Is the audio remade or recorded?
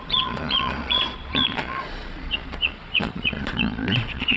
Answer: remade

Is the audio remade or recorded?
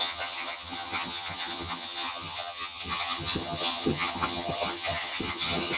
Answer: remade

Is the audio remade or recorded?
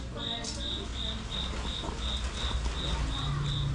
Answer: recorded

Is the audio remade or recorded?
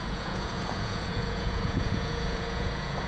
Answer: remade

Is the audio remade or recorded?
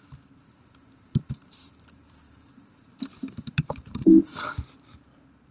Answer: remade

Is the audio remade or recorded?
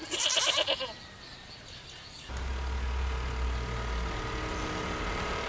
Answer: recorded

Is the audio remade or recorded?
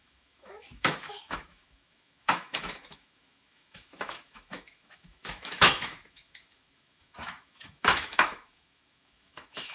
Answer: remade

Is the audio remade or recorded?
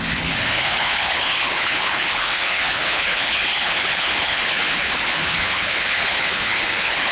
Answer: remade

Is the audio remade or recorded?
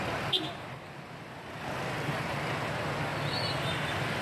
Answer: recorded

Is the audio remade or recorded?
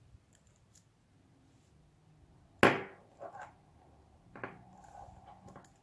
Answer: recorded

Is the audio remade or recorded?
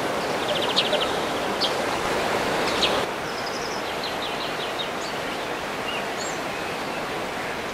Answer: recorded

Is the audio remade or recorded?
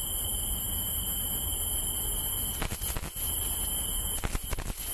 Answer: recorded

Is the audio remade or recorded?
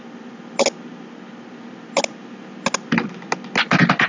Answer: recorded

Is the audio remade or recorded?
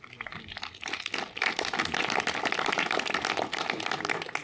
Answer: recorded